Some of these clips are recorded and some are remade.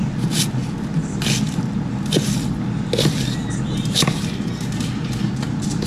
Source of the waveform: recorded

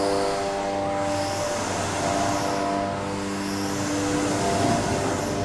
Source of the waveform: recorded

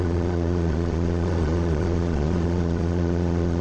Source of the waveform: remade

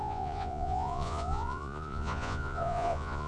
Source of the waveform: remade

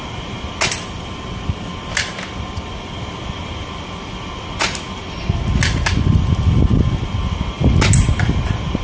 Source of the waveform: recorded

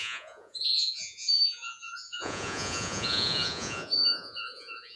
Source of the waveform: remade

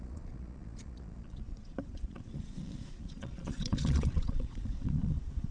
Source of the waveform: remade